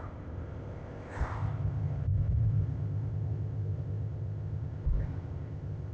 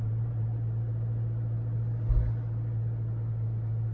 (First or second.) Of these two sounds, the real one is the second